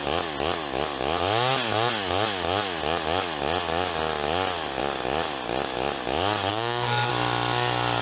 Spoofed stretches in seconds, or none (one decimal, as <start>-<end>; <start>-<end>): 6.5-7.1